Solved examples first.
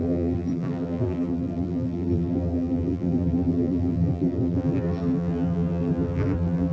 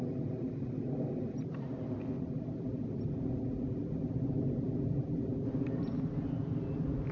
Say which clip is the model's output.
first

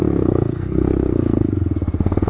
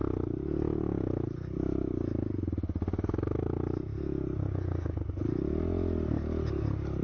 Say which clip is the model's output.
first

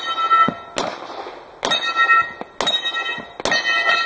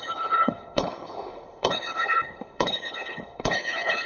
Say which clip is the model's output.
second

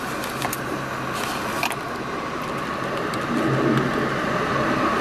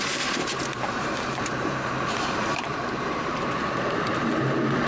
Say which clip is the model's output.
second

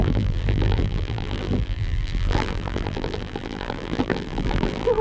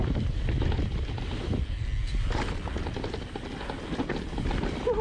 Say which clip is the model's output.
first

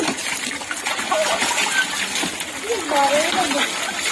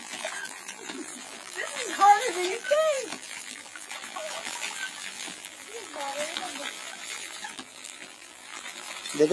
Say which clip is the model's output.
second